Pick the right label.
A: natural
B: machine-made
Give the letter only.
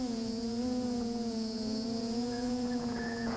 B